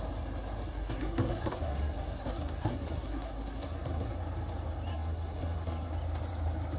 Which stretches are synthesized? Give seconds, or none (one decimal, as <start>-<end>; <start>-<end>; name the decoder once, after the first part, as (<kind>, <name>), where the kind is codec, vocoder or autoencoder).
0.7-4.1 (codec, SNAC); 4.9-5.9